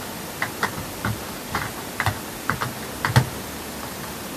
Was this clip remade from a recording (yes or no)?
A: no